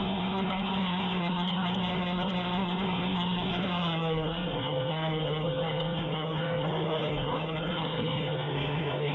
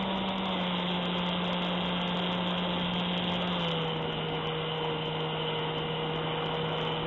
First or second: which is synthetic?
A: first